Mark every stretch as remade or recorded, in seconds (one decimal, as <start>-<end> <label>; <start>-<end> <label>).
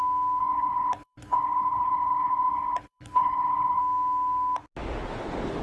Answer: 0.0-0.4 recorded; 0.4-3.8 remade; 3.8-5.6 recorded